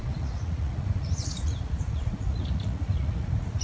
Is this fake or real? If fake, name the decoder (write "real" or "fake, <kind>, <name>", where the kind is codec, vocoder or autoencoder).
fake, vocoder, Vocos